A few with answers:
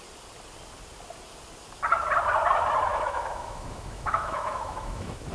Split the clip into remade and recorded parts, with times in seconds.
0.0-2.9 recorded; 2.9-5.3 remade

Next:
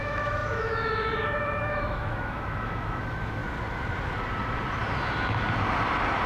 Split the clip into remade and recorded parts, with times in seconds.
0.0-3.4 remade; 3.4-6.3 recorded

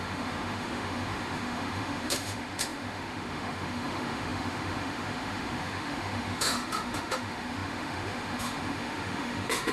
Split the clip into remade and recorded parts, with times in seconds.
0.0-9.7 remade